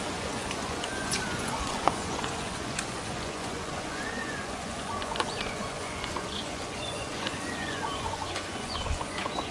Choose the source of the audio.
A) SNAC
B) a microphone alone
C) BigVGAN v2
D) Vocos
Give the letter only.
D